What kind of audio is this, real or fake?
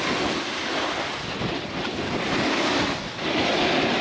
real